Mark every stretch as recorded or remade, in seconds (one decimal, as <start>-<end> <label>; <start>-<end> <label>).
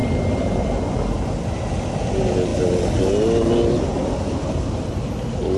0.0-5.6 recorded